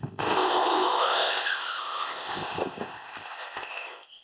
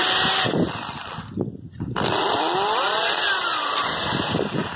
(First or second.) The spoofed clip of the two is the first